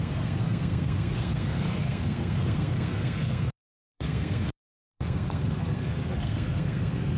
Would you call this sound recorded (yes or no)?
no